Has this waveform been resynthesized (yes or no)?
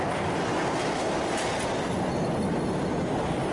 no